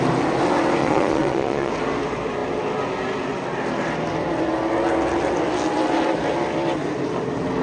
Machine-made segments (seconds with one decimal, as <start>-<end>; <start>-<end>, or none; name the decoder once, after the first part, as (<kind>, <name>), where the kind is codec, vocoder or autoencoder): 0.8-1.7 (vocoder, Vocos)

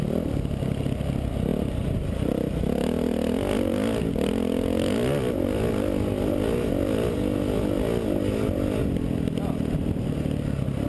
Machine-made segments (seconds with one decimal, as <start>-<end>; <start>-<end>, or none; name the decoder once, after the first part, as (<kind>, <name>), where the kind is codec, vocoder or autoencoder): none